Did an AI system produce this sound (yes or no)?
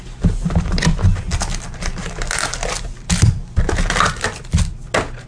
no